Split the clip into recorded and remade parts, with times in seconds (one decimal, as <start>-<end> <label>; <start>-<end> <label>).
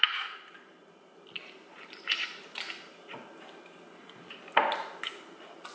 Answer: 0.0-5.7 recorded